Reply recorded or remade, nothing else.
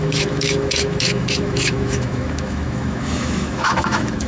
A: remade